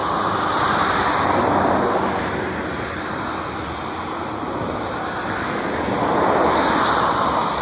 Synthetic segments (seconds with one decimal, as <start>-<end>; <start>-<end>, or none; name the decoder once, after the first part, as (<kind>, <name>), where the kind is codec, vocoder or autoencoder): none